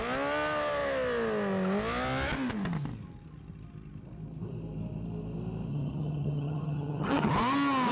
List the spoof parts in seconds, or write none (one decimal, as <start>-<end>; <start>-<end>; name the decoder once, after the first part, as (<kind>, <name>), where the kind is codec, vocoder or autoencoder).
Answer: 5.7-7.3 (vocoder, HiFi-GAN)